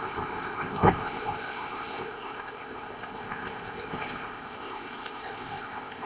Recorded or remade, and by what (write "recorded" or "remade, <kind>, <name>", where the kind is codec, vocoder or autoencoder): remade, codec, ZipCodec